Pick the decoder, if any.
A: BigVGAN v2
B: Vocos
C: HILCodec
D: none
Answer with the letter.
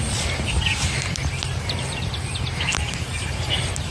A